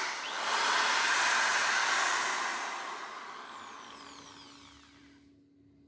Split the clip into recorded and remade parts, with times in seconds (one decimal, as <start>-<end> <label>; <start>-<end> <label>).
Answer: 0.0-5.9 recorded